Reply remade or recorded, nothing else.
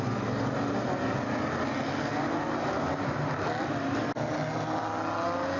recorded